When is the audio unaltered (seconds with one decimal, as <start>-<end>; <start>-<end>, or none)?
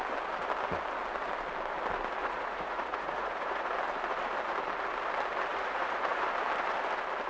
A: 0.0-2.2; 3.7-5.5; 6.2-7.3